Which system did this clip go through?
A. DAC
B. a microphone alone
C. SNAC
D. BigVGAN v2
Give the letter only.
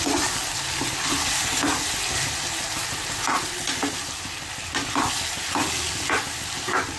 B